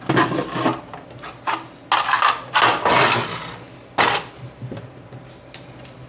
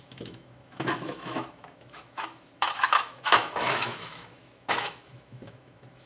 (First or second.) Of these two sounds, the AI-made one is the second